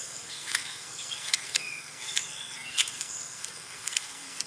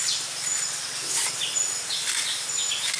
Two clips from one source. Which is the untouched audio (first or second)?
second